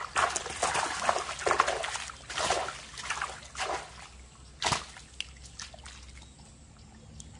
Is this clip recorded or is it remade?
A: recorded